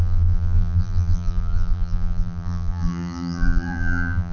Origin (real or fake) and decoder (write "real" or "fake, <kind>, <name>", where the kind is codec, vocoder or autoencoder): fake, vocoder, BigVGAN v2